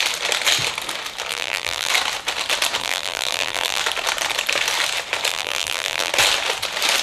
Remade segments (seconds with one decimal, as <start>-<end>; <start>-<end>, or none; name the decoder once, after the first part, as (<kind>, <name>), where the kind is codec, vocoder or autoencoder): 1.3-1.9 (vocoder, BigVGAN v2); 2.8-3.8; 5.3-6.1